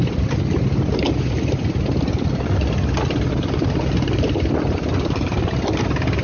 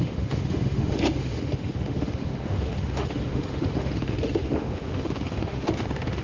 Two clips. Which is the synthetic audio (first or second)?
second